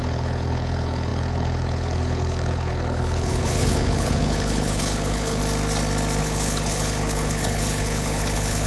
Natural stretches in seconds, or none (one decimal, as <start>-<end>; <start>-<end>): 5.4-6.2